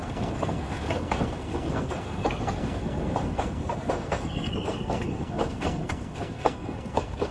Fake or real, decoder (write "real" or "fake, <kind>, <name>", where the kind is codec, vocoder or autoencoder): fake, codec, SNAC